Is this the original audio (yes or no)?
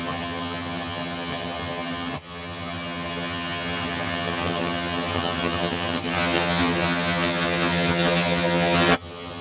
no